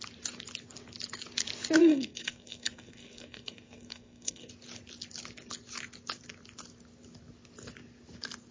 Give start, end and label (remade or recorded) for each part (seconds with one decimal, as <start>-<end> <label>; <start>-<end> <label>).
0.0-1.8 recorded; 1.8-4.5 remade; 4.5-8.5 recorded